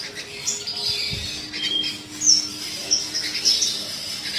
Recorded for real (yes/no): yes